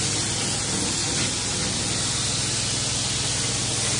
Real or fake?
real